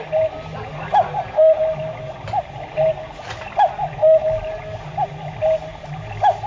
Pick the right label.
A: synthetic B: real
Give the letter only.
B